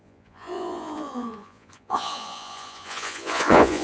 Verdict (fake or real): fake